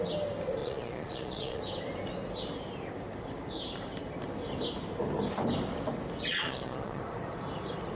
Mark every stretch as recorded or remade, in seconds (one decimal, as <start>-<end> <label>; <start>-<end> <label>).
0.0-0.6 recorded; 0.6-1.6 remade; 1.6-6.3 recorded; 6.3-7.0 remade; 7.0-7.9 recorded